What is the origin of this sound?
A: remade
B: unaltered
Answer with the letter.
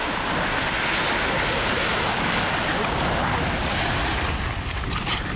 B